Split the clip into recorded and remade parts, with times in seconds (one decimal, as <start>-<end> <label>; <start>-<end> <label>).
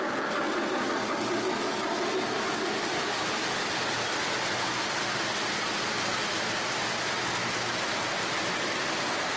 0.0-9.4 recorded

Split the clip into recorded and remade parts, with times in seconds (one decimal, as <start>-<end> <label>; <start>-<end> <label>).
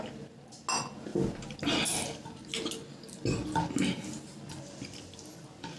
0.0-5.8 recorded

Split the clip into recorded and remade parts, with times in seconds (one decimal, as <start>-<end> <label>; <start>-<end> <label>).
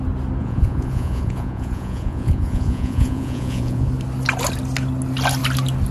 0.0-0.4 recorded; 0.4-3.9 remade; 3.9-5.9 recorded